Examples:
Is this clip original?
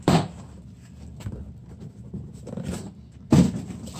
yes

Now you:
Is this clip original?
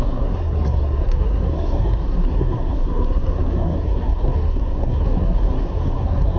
no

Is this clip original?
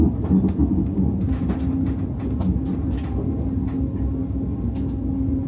yes